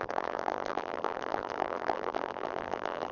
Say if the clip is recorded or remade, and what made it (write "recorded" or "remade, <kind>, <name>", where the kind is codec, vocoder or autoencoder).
remade, vocoder, BigVGAN v2